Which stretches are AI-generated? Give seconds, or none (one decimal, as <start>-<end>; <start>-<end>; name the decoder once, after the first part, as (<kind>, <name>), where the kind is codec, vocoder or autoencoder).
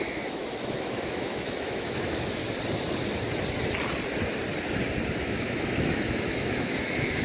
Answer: 0.0-2.4 (autoencoder, DAC-VAE); 5.2-7.2